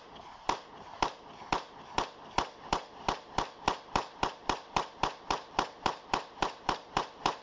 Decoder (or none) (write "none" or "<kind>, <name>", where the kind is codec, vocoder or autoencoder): vocoder, BigVGAN v2